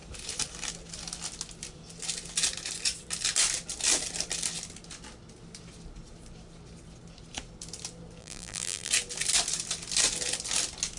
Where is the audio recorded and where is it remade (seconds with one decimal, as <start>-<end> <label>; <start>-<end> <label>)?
0.0-8.2 recorded; 8.2-8.9 remade; 8.9-11.0 recorded